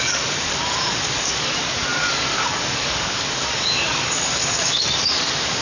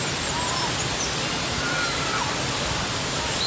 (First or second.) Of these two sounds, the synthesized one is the first